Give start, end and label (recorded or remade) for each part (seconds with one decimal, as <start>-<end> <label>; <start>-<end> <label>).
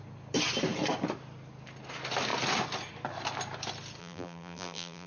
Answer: 0.0-4.0 recorded; 4.0-5.1 remade